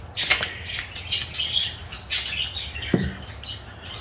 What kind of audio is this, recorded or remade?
recorded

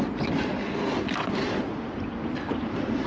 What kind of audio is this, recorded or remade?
recorded